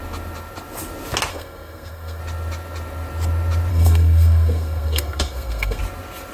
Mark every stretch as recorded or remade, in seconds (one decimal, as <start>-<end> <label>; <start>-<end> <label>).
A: 0.0-1.3 recorded; 1.3-2.2 remade; 2.2-3.7 recorded; 3.7-5.8 remade; 5.8-6.3 recorded